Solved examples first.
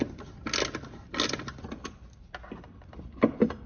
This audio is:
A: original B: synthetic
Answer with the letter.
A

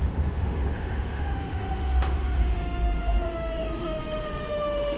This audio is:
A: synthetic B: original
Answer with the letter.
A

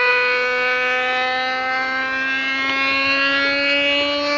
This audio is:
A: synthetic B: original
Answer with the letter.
B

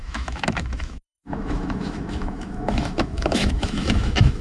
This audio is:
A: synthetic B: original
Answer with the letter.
A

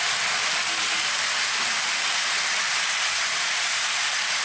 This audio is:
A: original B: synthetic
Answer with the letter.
A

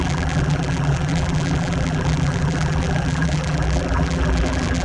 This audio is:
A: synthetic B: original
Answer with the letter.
A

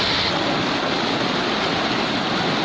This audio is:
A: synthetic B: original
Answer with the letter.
B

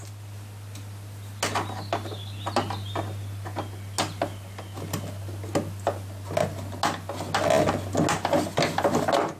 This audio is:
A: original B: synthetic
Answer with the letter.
A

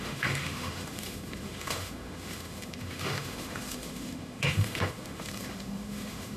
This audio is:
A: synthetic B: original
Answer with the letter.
A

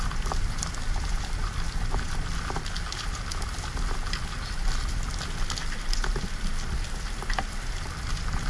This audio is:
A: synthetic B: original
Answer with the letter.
B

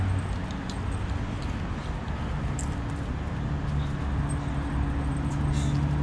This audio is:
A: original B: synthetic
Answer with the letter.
A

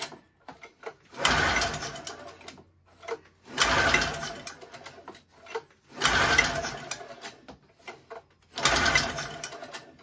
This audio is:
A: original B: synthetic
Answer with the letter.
A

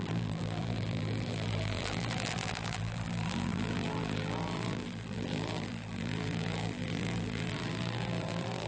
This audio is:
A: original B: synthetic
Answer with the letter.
B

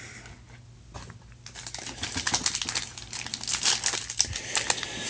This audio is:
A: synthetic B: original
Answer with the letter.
B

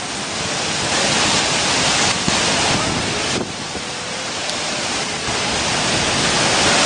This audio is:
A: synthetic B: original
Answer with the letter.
B